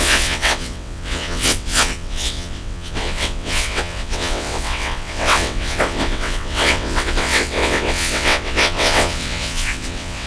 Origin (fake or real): fake